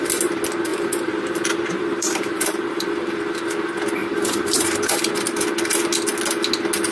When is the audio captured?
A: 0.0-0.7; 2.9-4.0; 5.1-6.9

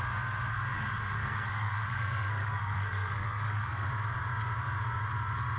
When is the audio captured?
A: 0.0-0.5; 3.9-5.6

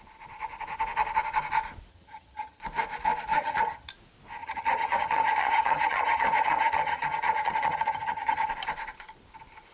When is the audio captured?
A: 0.0-1.9; 2.6-3.3; 3.9-4.4; 8.5-9.7

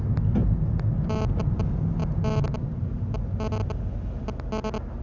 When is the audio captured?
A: 0.0-5.0

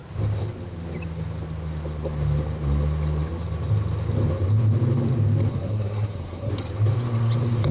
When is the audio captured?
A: 0.0-5.5; 6.5-7.7

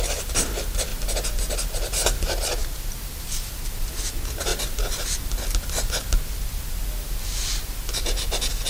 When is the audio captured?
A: 0.9-1.7; 4.5-8.7

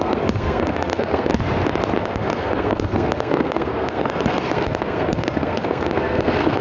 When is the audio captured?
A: 1.3-2.0

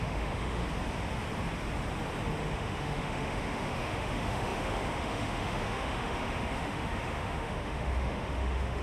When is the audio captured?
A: 0.6-2.5